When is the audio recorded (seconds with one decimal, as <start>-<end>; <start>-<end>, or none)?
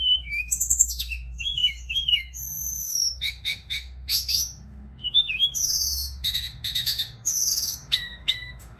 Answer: none